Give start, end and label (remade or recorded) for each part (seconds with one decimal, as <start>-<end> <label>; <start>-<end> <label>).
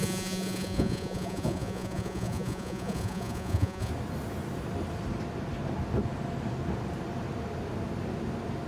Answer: 0.0-3.9 remade; 3.9-8.7 recorded